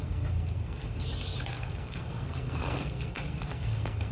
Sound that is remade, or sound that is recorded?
remade